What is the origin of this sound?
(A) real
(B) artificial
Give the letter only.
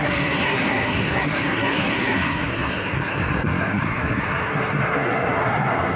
B